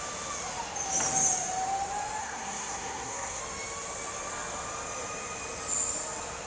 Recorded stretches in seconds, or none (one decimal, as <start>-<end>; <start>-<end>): 0.0-2.2; 3.4-6.5